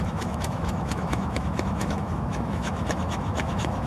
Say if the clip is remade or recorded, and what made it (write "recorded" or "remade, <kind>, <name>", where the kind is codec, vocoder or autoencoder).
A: remade, autoencoder, DAC-VAE